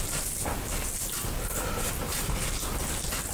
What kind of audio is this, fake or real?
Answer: real